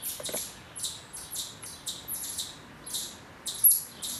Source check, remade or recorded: recorded